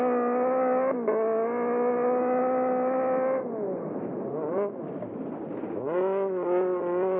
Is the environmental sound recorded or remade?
recorded